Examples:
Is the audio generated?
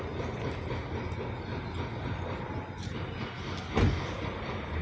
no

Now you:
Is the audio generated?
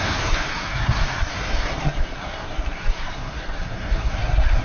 yes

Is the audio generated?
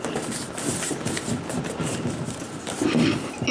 no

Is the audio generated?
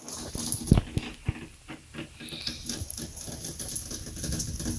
no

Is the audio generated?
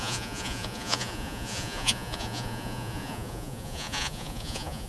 yes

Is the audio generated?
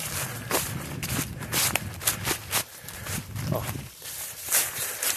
yes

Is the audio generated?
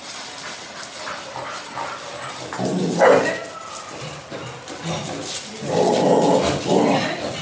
no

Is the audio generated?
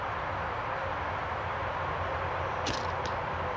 no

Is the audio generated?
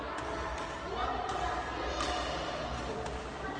no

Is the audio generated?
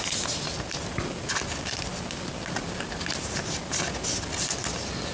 no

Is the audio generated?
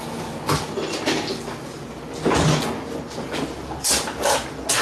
no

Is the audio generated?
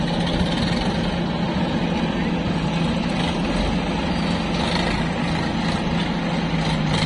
no